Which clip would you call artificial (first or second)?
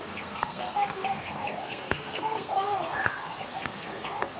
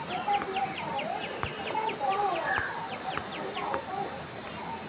first